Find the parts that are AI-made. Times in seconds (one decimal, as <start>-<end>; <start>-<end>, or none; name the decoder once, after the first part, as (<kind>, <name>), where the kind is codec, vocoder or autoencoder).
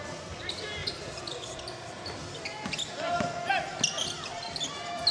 none